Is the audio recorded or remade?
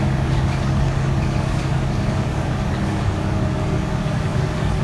remade